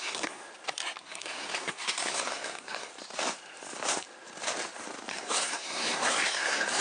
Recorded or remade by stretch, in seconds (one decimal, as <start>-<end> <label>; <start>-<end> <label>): 0.0-0.4 remade; 0.4-1.0 recorded; 1.0-2.9 remade; 2.9-5.1 recorded; 5.1-6.8 remade